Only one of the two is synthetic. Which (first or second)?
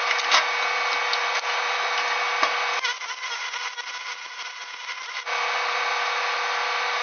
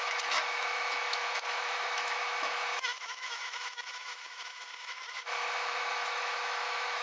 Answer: second